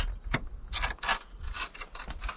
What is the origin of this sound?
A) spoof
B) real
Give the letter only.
B